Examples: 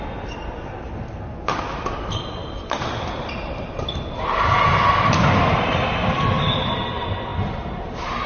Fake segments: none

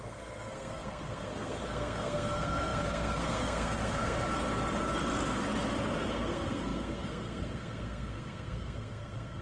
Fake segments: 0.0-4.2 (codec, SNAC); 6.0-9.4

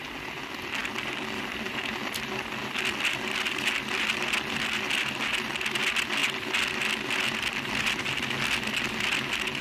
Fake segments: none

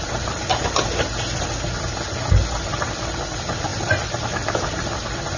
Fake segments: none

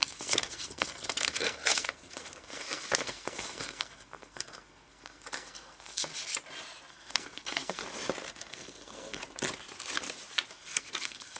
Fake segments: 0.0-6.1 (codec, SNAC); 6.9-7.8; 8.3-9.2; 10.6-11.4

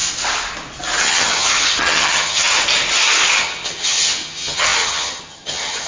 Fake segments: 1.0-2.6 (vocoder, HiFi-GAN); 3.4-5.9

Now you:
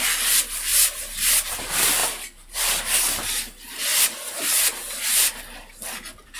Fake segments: 0.0-6.4 (vocoder, BigVGAN v2)